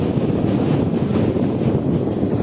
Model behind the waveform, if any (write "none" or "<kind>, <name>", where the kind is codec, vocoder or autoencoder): none